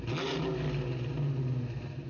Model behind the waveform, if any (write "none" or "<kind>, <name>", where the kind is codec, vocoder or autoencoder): none